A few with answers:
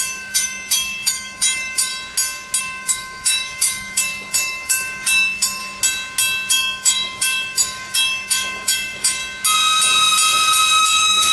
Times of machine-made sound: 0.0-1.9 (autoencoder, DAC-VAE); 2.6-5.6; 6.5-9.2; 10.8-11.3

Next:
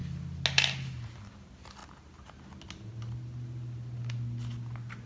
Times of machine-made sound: none